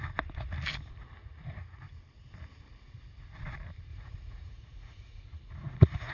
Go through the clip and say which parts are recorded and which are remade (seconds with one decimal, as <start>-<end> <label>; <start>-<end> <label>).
0.0-1.2 recorded; 1.2-1.8 remade; 1.8-3.9 recorded; 3.9-6.1 remade